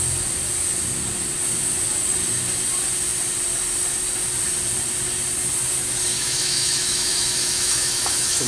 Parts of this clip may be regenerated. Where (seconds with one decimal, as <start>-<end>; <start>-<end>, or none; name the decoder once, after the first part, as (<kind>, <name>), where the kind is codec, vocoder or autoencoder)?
6.1-8.5 (autoencoder, DAC-VAE)